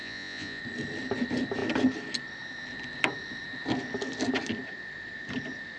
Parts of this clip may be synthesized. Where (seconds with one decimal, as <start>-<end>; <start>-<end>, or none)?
0.0-0.6